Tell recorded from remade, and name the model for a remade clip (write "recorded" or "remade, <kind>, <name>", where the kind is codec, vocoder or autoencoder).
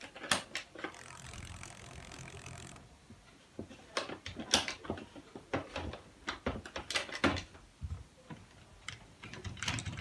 recorded